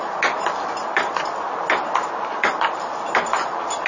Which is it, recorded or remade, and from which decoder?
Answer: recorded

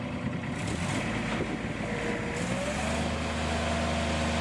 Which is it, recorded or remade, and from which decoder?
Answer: recorded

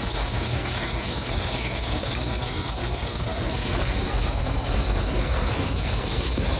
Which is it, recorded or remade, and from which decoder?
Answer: remade, codec, SNAC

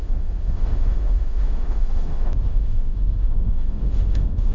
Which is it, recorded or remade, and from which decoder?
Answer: remade, autoencoder, DAC-VAE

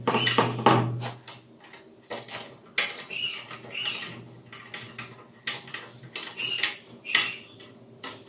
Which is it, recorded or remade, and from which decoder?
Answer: recorded